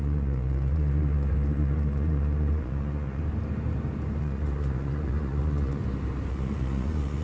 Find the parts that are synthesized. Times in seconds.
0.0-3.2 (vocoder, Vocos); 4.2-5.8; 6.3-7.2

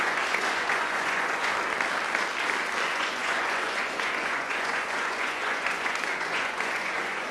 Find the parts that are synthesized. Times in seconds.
0.0-1.5 (vocoder, Vocos); 2.8-7.3

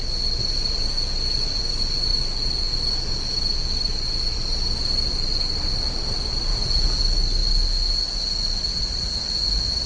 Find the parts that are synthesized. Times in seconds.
6.5-7.0 (vocoder, Vocos)

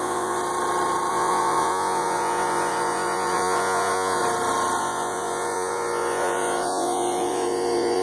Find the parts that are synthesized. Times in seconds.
0.0-0.4 (vocoder, Vocos); 1.1-4.2; 4.8-8.0

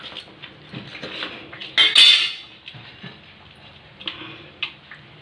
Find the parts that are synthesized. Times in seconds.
none